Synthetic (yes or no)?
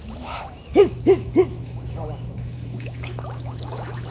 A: yes